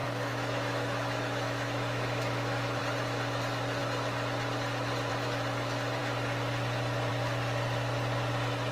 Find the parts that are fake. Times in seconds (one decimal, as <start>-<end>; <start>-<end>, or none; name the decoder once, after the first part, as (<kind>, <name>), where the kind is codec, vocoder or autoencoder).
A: 0.0-2.8 (autoencoder, DAC-VAE)